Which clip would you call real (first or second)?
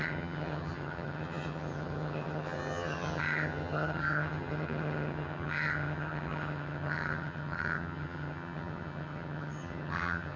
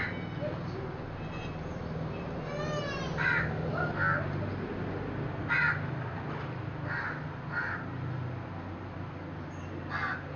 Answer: second